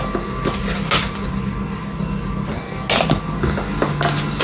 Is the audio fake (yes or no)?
no